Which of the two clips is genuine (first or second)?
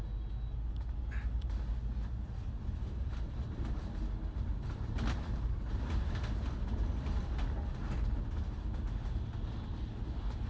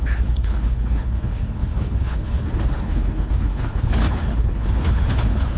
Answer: first